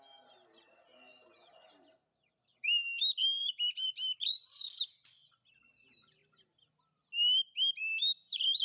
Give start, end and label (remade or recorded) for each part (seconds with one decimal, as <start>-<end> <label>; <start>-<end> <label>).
0.0-8.6 recorded

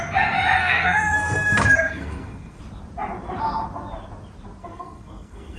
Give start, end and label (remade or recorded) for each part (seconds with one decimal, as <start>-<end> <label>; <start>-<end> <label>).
0.0-0.6 recorded; 0.6-2.6 remade; 2.6-4.6 recorded; 4.6-5.6 remade

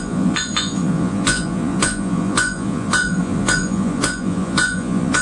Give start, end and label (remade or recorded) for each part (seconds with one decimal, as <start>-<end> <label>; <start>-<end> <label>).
0.0-5.2 remade

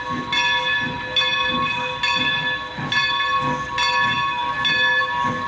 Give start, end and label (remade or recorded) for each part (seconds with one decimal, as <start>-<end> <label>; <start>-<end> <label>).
0.0-5.5 recorded

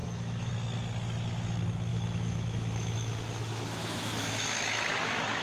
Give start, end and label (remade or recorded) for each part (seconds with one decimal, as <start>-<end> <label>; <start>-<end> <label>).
0.0-0.5 remade; 0.5-1.9 recorded; 1.9-5.4 remade

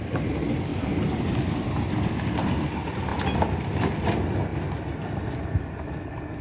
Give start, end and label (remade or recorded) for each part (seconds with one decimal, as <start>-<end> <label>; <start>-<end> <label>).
0.0-0.7 recorded; 0.7-2.1 remade; 2.1-6.4 recorded